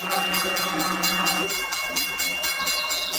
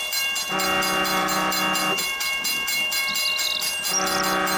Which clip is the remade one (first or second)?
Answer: first